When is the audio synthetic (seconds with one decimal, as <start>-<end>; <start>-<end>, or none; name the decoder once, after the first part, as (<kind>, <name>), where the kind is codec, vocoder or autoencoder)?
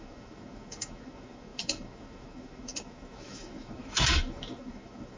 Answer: 0.0-5.2 (autoencoder, DAC-VAE)